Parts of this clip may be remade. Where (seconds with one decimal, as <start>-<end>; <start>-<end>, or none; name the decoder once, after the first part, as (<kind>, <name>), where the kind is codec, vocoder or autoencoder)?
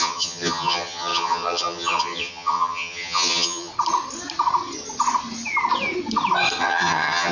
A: 0.0-3.7 (vocoder, HiFi-GAN); 6.6-7.3